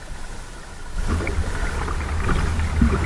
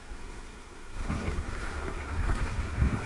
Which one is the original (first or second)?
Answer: first